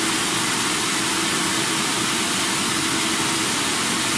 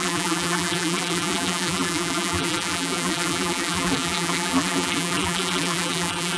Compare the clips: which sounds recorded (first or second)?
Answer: first